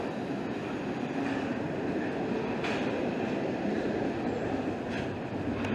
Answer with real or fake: real